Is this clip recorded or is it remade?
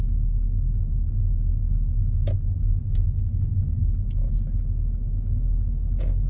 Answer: recorded